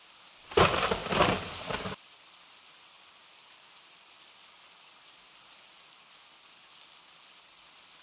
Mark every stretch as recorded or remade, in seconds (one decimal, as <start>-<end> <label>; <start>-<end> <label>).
0.0-8.0 recorded